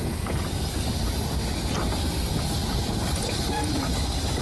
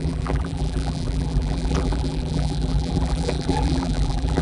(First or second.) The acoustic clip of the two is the first